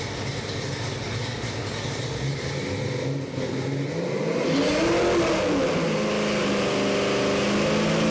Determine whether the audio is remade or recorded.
recorded